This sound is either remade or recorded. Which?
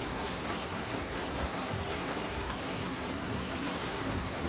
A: remade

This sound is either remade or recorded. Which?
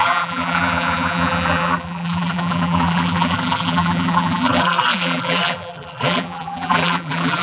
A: remade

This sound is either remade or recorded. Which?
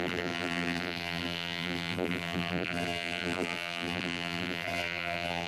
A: remade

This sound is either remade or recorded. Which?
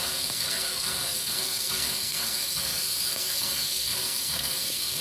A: remade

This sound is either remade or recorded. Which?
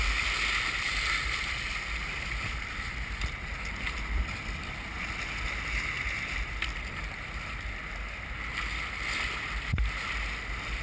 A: recorded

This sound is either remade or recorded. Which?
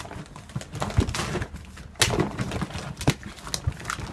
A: recorded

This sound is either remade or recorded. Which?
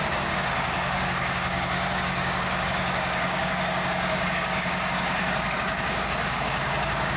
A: remade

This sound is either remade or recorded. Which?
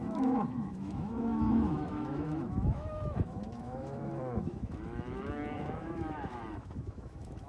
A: remade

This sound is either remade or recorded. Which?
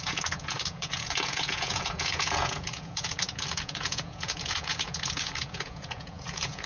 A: remade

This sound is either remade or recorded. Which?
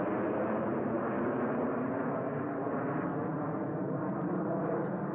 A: recorded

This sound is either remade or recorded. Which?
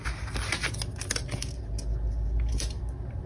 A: recorded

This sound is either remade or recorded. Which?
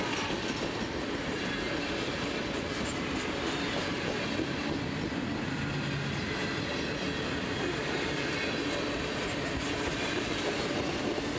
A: recorded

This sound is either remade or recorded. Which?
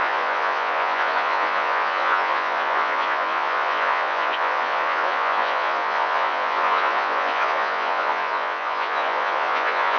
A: remade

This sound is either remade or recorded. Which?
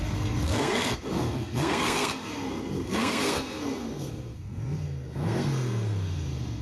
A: remade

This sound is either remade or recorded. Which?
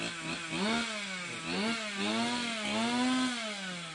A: recorded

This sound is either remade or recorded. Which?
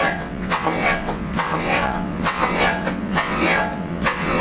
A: remade